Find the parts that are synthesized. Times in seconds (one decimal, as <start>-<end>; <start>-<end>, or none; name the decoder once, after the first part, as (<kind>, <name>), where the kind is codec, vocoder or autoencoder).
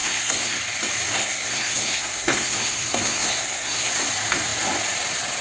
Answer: 0.0-0.6 (codec, SNAC); 1.1-3.9